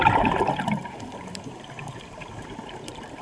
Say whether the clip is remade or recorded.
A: remade